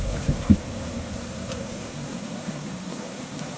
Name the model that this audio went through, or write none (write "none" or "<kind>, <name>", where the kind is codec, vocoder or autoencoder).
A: codec, SNAC